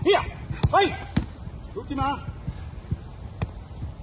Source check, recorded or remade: recorded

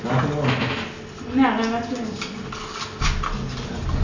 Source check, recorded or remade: recorded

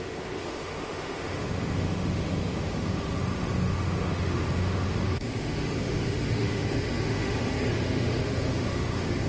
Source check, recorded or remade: remade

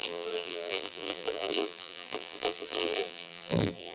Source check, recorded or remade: remade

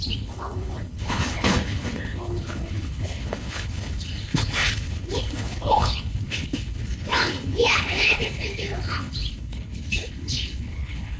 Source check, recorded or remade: remade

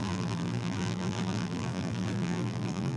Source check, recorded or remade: remade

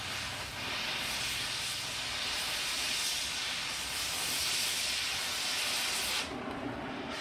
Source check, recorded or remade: recorded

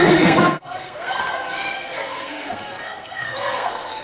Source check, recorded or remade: remade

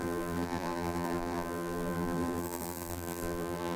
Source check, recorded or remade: remade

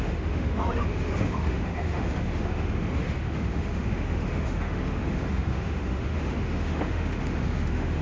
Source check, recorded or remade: remade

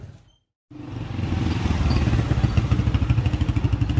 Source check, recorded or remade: recorded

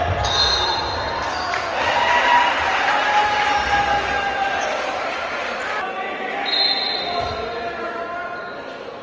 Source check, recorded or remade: recorded